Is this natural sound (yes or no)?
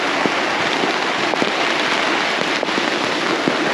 yes